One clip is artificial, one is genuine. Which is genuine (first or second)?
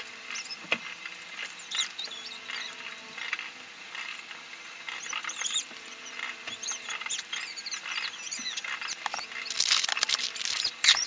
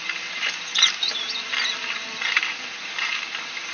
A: first